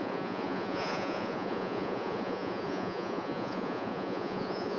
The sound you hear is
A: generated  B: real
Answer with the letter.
A